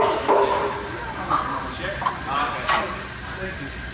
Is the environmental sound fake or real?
real